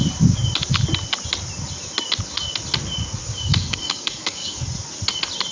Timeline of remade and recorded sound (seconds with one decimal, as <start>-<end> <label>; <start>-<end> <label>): 0.0-3.5 recorded; 3.5-4.6 remade; 4.6-5.5 recorded